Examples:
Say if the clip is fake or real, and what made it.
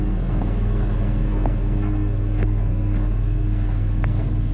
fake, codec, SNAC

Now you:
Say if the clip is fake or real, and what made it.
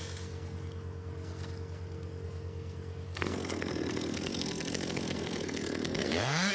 fake, codec, SNAC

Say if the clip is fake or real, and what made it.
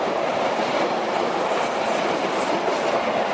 real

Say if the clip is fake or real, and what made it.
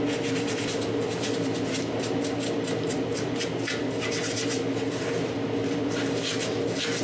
real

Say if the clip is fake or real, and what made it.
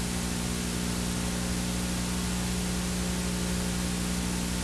real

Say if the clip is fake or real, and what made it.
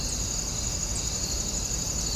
real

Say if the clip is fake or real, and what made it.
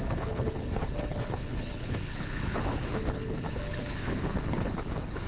fake, codec, HILCodec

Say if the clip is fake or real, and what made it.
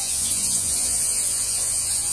fake, vocoder, Vocos